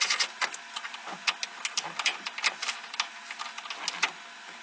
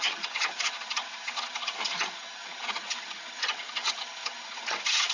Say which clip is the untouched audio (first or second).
first